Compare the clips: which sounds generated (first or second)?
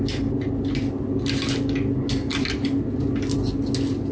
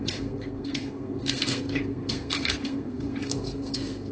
second